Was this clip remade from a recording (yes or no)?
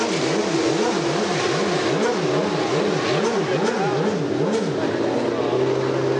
no